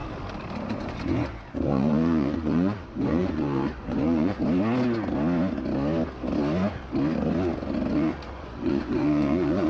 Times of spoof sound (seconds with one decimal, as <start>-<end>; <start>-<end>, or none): 0.6-4.4; 7.9-9.7